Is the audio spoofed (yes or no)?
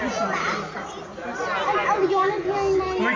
no